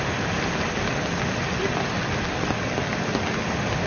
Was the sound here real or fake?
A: real